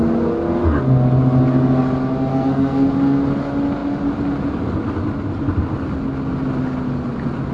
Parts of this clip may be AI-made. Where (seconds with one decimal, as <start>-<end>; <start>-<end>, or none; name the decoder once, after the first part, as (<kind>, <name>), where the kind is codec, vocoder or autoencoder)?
2.3-2.9 (codec, SNAC)